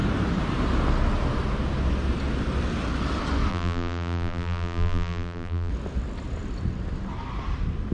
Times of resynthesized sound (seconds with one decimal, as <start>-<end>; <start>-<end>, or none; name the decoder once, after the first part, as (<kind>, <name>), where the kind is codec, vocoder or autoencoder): 3.5-5.7 (vocoder, BigVGAN v2)